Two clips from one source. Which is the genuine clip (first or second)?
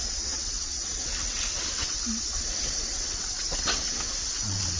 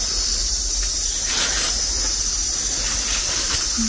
second